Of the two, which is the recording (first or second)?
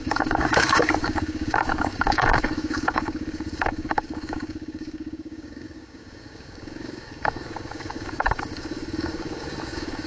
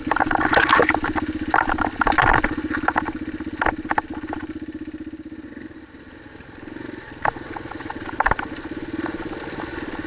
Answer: second